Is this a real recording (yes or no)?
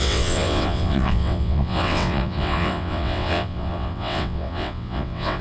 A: no